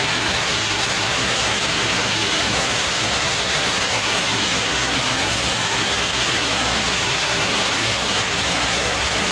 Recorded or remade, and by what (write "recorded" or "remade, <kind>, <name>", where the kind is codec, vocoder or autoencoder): remade, codec, SNAC